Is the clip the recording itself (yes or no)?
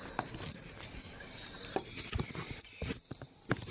yes